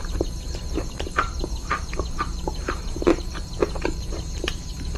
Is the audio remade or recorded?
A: remade